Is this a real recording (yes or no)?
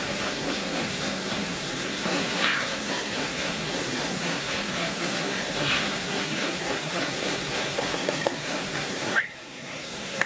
no